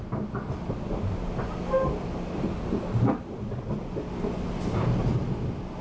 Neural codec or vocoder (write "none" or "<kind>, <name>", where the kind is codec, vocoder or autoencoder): none